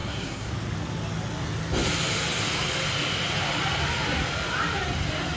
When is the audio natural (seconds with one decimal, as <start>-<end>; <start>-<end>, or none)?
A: 0.5-5.4